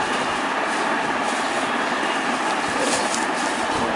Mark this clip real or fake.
real